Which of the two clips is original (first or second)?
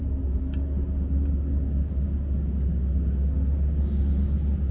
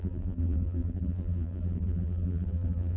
first